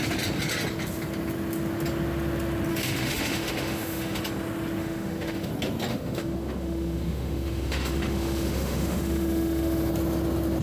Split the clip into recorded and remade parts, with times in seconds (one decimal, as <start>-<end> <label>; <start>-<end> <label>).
0.0-2.7 recorded; 2.7-4.2 remade; 4.2-4.8 recorded; 4.8-5.5 remade; 5.5-5.9 recorded; 5.9-9.9 remade; 9.9-10.6 recorded